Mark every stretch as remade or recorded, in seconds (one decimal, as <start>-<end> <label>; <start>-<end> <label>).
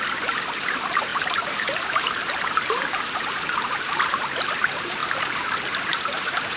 0.0-5.0 remade; 5.0-5.9 recorded; 5.9-6.6 remade